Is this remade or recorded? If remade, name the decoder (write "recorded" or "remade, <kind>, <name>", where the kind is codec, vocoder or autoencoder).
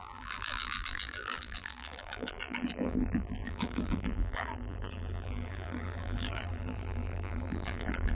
remade, vocoder, BigVGAN v2